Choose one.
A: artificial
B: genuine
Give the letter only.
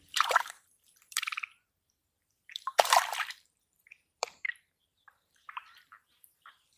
A